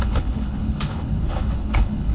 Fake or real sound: fake